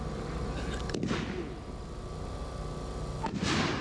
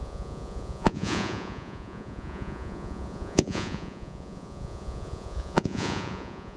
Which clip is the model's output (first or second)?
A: second